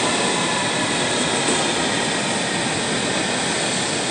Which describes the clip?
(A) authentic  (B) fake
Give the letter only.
A